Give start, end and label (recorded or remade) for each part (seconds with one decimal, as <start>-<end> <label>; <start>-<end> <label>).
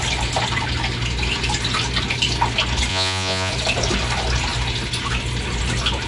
0.0-2.9 recorded; 2.9-3.5 remade; 3.5-6.1 recorded